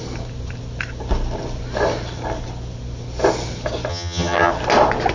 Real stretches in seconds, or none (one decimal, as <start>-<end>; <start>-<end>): 0.0-3.9; 4.5-5.1